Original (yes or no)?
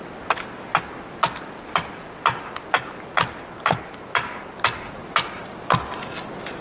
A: yes